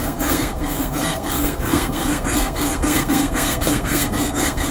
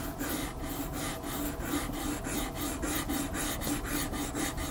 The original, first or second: second